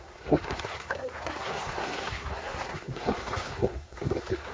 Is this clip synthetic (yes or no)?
yes